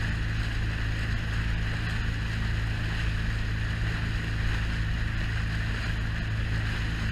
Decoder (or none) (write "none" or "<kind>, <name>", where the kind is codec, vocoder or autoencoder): none